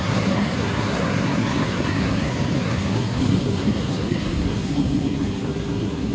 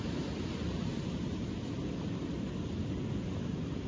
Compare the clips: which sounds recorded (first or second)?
second